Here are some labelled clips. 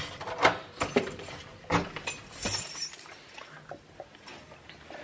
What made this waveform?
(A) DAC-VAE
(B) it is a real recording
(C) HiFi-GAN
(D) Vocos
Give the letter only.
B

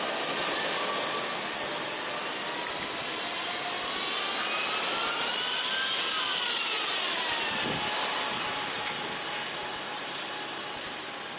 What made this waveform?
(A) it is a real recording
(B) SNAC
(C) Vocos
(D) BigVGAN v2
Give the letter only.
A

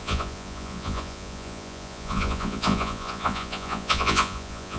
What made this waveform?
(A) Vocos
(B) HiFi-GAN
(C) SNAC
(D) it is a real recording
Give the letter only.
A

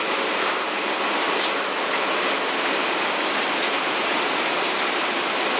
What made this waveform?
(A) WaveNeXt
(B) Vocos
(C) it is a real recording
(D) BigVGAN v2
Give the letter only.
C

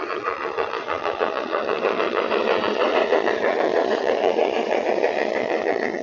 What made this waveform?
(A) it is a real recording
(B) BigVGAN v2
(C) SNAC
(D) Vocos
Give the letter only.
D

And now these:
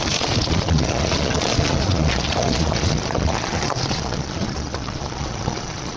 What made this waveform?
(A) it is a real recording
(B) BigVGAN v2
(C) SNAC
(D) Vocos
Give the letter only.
D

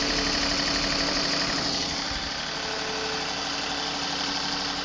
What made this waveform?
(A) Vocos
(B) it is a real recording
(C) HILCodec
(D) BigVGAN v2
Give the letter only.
B